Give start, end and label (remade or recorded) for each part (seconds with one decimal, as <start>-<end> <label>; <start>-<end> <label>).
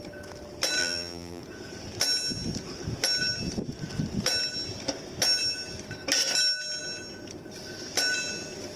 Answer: 0.0-0.8 recorded; 0.8-1.4 remade; 1.4-8.8 recorded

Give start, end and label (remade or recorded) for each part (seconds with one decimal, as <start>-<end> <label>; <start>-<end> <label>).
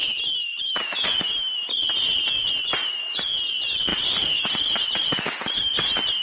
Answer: 0.0-3.9 recorded; 3.9-5.2 remade; 5.2-6.2 recorded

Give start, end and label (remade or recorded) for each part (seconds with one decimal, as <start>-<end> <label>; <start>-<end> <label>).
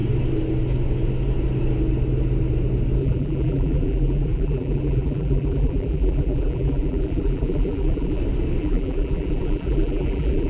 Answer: 0.0-3.0 recorded; 3.0-8.2 remade; 8.2-8.6 recorded; 8.6-10.5 remade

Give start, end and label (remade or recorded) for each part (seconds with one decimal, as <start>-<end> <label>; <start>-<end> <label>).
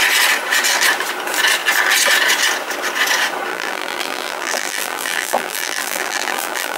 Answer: 0.0-3.5 recorded; 3.5-6.8 remade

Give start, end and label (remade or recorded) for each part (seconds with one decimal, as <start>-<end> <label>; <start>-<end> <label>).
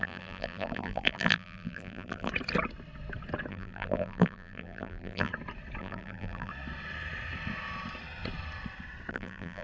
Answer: 0.0-2.3 remade; 2.3-3.5 recorded; 3.5-5.3 remade; 5.3-5.8 recorded; 5.8-6.5 remade; 6.5-9.1 recorded; 9.1-9.6 remade